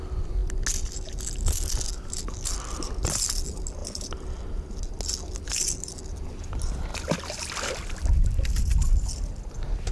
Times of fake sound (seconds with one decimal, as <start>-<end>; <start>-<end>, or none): 6.9-7.7

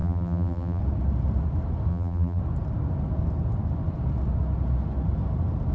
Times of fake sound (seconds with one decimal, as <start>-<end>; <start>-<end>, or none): 0.0-0.8; 1.9-2.4

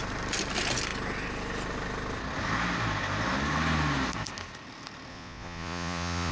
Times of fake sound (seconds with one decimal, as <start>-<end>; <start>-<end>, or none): 5.1-6.3

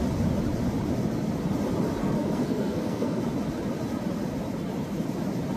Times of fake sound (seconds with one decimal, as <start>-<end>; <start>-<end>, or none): 2.0-3.2

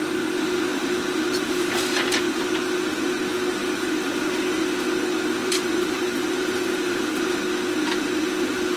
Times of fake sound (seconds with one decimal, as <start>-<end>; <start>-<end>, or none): 0.7-2.6; 3.6-4.2; 5.4-7.4